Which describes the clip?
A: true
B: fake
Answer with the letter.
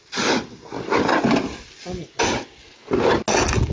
A